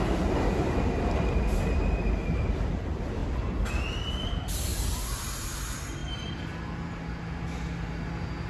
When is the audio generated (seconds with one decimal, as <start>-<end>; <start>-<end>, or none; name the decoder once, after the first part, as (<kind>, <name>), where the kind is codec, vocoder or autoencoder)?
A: none